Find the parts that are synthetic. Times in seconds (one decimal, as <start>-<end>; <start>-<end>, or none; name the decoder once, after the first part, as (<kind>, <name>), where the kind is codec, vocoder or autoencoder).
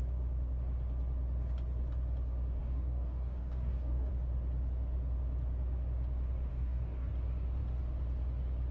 2.6-4.1 (codec, DAC); 6.5-7.1